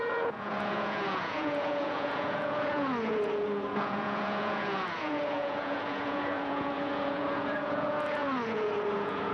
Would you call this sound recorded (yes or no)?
no